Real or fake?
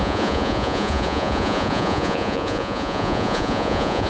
fake